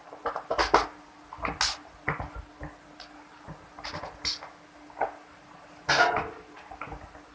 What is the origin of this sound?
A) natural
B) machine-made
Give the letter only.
A